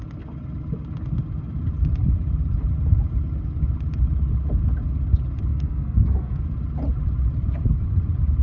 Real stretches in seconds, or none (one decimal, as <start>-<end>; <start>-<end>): 0.0-5.5; 6.4-8.4